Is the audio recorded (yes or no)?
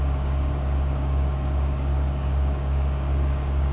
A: no